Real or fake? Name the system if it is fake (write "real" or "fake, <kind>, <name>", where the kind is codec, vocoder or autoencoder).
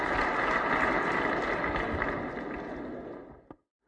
real